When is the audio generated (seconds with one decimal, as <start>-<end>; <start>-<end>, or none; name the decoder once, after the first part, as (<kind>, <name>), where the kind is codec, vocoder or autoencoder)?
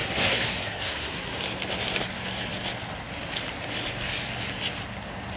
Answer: 0.0-1.3 (codec, SNAC)